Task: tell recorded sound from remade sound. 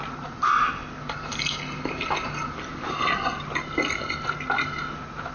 recorded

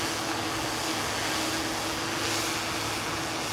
recorded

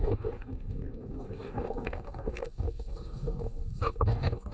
remade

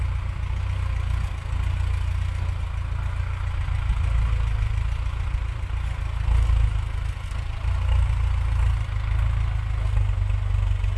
recorded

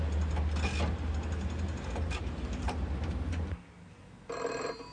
recorded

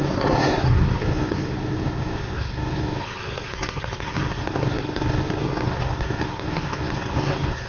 remade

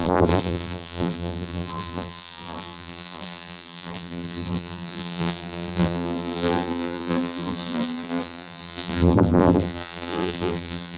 remade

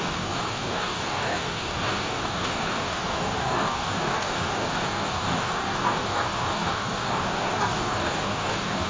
remade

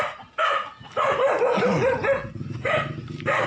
recorded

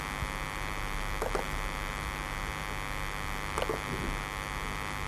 recorded